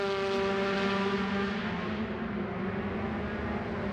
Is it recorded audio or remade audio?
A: recorded